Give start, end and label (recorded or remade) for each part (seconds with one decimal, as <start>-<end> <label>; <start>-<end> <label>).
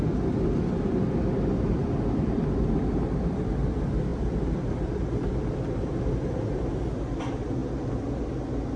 0.0-4.1 recorded; 4.1-5.0 remade; 5.0-8.8 recorded